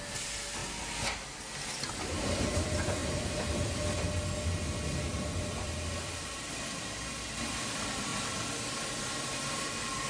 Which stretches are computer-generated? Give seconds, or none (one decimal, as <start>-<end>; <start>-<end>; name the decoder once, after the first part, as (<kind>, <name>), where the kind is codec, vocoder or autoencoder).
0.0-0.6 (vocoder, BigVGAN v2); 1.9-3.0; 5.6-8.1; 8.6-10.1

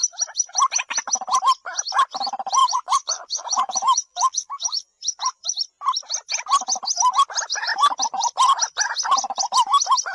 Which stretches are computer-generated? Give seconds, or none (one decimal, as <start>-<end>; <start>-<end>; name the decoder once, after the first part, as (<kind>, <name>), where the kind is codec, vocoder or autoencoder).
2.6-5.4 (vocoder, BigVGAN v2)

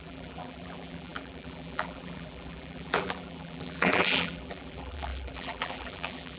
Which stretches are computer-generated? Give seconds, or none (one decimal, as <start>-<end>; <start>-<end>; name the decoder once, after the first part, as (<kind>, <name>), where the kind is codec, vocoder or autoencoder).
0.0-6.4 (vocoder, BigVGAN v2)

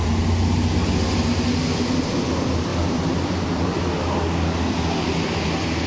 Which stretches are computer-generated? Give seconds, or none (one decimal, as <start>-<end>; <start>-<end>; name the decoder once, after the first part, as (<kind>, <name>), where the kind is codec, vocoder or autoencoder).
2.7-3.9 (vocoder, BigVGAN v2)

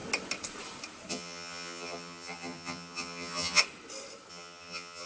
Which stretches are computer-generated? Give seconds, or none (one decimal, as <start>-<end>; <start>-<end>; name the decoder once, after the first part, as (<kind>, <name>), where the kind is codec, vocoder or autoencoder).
1.1-3.6 (vocoder, HiFi-GAN); 4.3-5.1

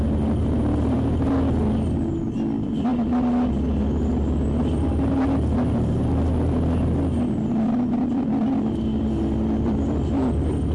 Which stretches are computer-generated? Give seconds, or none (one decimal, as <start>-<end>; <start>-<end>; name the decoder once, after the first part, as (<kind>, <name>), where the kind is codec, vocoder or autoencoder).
none

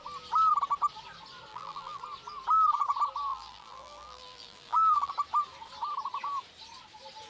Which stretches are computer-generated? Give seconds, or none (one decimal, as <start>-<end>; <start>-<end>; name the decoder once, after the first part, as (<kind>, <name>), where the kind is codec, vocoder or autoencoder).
1.5-2.0 (vocoder, BigVGAN v2); 3.3-5.1

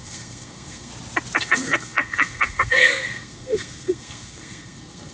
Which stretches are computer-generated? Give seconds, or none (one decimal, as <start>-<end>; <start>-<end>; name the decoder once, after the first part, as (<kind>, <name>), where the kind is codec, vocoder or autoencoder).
0.0-0.9 (codec, SNAC); 1.4-5.1